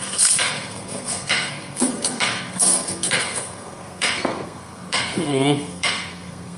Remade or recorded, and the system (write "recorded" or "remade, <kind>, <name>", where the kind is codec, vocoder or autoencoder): remade, codec, SNAC